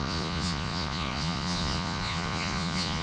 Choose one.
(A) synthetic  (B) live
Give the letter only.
A